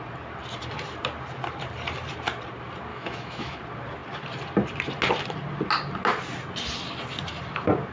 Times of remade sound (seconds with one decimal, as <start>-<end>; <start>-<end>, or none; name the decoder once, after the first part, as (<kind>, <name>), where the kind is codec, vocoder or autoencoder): 2.9-3.6 (autoencoder, DAC-VAE)